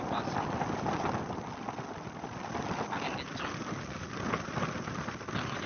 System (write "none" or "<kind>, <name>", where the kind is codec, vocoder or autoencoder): none